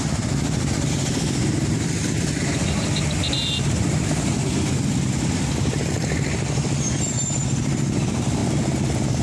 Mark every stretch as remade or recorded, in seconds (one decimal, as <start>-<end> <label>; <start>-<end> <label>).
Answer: 0.0-8.4 remade; 8.4-9.2 recorded